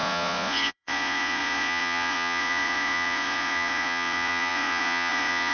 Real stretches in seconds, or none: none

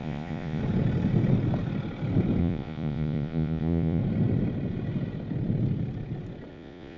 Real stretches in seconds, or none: 0.6-2.4; 4.0-6.5